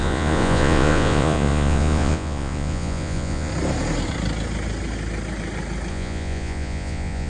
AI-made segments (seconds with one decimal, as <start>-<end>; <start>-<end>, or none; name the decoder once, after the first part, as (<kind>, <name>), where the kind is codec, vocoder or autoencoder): 0.0-3.5 (vocoder, Vocos); 5.9-7.3